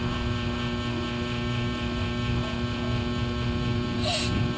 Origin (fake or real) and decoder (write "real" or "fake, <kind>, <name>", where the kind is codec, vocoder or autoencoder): real